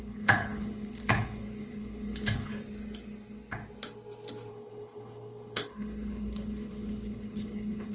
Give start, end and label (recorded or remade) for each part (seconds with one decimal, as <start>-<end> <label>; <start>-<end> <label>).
0.0-2.5 remade; 2.5-4.5 recorded; 4.5-7.9 remade